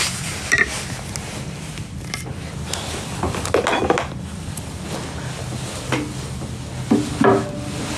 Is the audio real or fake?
real